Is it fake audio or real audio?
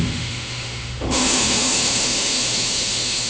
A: fake